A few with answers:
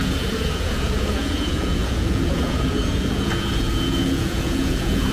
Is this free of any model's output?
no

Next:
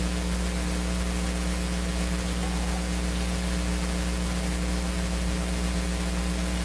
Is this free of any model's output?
yes